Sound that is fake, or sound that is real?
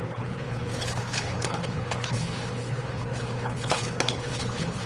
fake